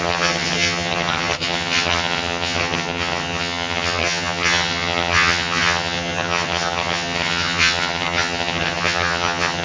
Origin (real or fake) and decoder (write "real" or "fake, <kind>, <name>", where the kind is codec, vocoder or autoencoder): fake, vocoder, HiFi-GAN